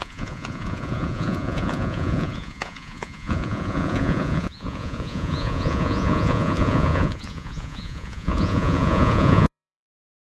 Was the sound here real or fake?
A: fake